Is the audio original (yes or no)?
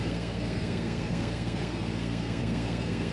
no